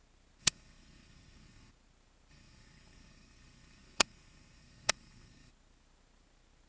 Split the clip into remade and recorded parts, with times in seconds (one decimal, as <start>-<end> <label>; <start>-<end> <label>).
0.0-0.4 recorded; 0.4-1.7 remade; 1.7-2.3 recorded; 2.3-5.5 remade; 5.5-6.7 recorded